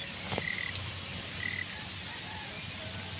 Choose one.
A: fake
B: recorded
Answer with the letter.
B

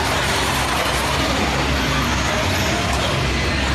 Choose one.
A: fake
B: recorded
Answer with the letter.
B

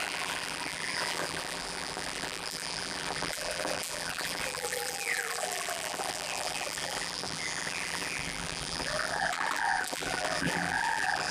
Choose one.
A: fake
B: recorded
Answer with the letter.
A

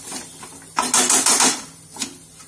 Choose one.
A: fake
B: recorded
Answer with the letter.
B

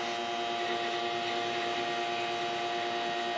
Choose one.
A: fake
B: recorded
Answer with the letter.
B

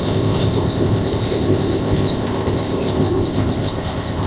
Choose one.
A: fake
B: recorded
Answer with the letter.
A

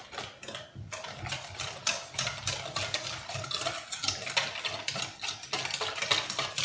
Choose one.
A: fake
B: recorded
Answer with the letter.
B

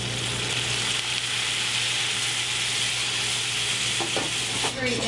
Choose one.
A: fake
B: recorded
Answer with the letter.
B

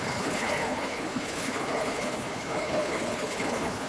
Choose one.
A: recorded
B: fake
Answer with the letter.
B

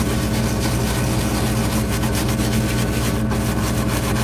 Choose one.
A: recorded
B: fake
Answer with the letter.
A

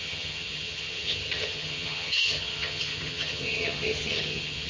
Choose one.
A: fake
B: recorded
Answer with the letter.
A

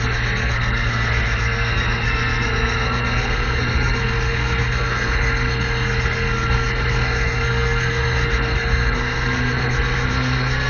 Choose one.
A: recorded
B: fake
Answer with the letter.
B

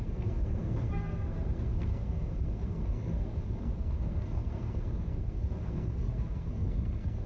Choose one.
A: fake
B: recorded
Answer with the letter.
A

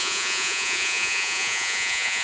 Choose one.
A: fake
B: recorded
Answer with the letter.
A